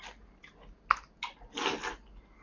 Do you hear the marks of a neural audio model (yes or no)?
no